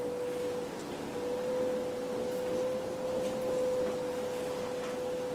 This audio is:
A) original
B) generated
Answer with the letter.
A